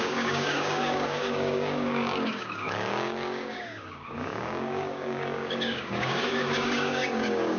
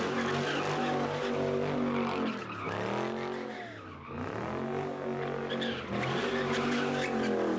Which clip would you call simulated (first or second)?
first